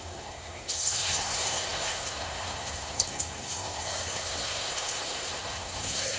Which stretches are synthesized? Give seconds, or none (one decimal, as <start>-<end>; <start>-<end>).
0.0-6.2